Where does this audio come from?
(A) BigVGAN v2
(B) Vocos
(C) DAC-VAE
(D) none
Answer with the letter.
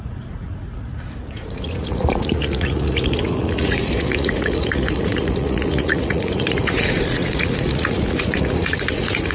B